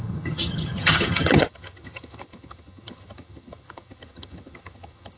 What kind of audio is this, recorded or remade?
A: remade